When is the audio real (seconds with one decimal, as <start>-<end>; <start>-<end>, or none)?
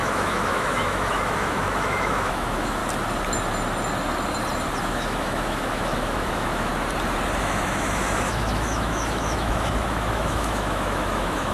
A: 2.8-4.8; 6.7-7.4